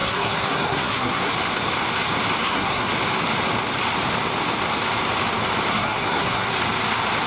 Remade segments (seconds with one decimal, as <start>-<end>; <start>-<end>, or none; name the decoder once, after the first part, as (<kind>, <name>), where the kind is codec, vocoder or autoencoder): 0.0-1.3 (codec, SNAC); 2.4-2.9; 5.7-6.5